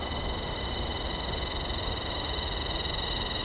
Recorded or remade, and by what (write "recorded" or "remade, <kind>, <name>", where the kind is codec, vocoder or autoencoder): recorded